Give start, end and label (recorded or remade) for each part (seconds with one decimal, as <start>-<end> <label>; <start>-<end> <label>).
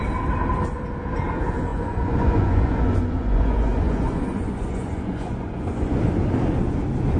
0.0-1.7 recorded; 1.7-6.0 remade; 6.0-7.2 recorded